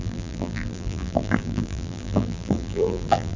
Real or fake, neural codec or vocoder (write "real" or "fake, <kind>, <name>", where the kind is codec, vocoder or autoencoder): fake, vocoder, BigVGAN v2